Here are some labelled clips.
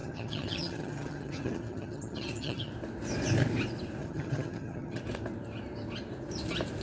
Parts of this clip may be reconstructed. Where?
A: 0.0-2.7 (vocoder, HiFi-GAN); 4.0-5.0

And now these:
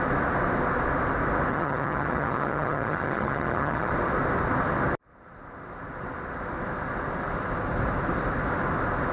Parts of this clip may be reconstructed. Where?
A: 1.5-3.9 (vocoder, HiFi-GAN)

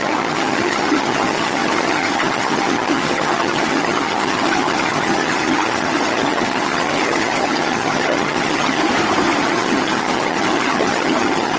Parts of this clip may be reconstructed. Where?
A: 0.0-8.8 (vocoder, HiFi-GAN); 9.4-11.6

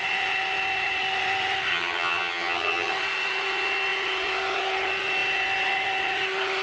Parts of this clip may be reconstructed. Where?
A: 1.7-2.9 (vocoder, HiFi-GAN)